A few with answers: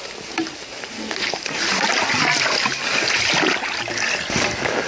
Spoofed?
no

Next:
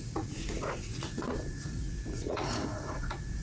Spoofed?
yes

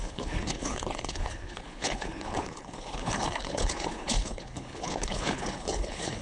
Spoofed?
yes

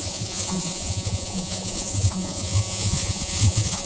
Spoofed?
yes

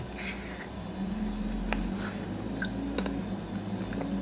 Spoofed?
no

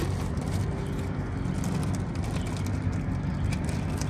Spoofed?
no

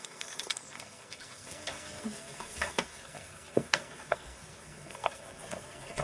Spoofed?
yes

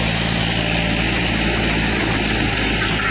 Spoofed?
no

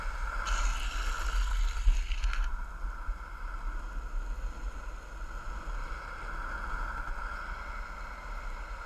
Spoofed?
no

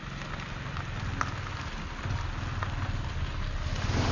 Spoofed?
no